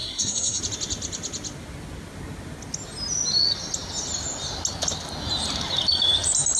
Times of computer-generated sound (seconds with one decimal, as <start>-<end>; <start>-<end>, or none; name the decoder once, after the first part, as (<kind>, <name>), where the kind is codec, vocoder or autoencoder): 0.0-0.6 (codec, SNAC)